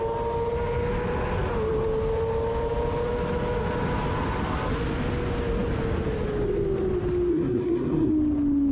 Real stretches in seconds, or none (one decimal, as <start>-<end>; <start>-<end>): 0.0-7.3; 8.1-8.7